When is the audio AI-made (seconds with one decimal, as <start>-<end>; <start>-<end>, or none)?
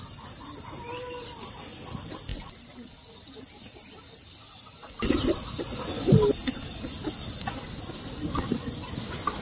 none